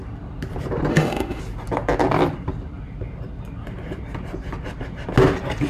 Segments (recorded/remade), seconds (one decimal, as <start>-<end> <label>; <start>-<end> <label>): 0.0-0.9 recorded; 0.9-1.4 remade; 1.4-5.7 recorded